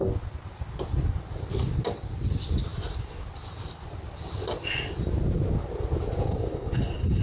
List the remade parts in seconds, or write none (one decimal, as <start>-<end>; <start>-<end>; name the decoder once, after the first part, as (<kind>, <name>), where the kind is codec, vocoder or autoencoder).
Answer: 6.3-7.2 (codec, HILCodec)